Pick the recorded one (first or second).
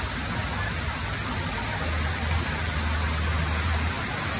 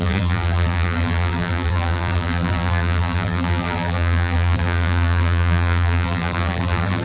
first